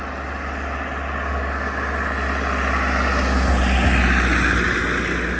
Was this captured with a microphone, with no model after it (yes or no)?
yes